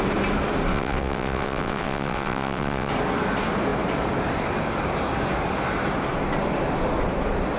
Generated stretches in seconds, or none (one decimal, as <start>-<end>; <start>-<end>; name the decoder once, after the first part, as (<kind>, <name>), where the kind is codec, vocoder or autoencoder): 0.7-2.9 (vocoder, WaveNeXt)